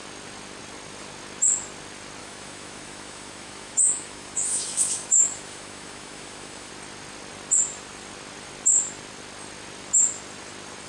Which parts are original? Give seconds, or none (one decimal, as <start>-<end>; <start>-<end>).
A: 0.0-2.2; 6.7-10.9